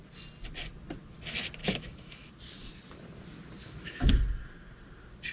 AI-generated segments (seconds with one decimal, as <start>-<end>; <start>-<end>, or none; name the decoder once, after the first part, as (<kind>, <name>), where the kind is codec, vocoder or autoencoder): 1.6-2.3 (autoencoder, DAC-VAE); 3.6-4.1